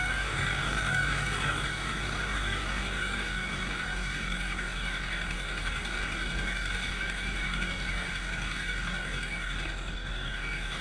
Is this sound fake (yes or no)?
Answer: yes